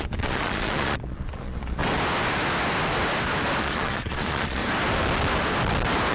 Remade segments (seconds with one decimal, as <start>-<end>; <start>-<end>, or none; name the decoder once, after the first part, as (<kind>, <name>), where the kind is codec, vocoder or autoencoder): 0.0-1.8 (vocoder, Vocos); 3.6-4.6